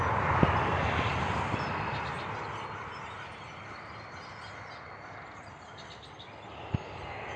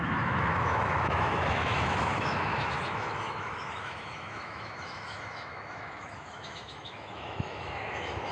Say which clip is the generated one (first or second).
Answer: second